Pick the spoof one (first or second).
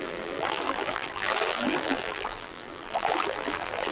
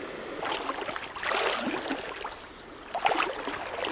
first